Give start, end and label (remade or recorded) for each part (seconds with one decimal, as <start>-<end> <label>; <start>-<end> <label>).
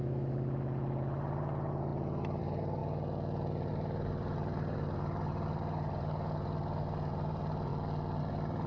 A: 0.0-2.8 remade; 2.8-3.7 recorded; 3.7-7.7 remade; 7.7-8.2 recorded; 8.2-8.7 remade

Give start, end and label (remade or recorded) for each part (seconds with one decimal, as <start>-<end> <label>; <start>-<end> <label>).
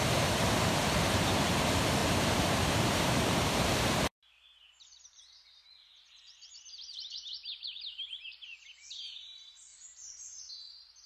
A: 0.0-2.0 recorded; 2.0-6.5 remade; 6.5-6.9 recorded; 6.9-8.1 remade; 8.1-9.7 recorded; 9.7-10.5 remade; 10.5-11.1 recorded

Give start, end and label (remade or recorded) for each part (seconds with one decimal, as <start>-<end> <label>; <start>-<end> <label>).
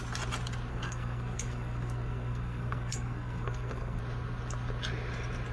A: 0.0-0.7 recorded; 0.7-4.0 remade; 4.0-5.5 recorded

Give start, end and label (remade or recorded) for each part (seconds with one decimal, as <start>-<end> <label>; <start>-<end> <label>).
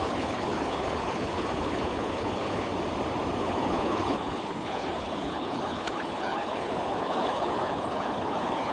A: 0.0-2.7 remade; 2.7-3.4 recorded; 3.4-8.7 remade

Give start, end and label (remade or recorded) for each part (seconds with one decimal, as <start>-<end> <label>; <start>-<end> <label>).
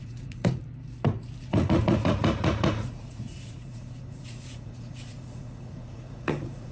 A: 0.0-0.6 remade; 0.6-1.4 recorded; 1.4-6.7 remade